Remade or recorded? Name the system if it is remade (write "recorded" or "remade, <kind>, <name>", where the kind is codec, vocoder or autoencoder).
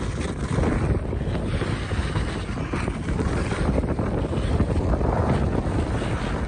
recorded